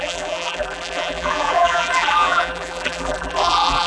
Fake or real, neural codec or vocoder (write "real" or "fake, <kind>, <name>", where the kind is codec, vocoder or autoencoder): fake, vocoder, BigVGAN v2